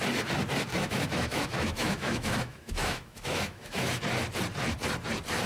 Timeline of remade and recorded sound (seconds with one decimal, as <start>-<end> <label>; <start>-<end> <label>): 0.0-0.7 recorded; 0.7-4.0 remade; 4.0-5.5 recorded